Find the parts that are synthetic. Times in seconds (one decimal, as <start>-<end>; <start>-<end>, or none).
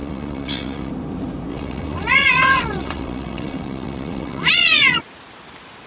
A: 0.0-0.9; 1.5-5.0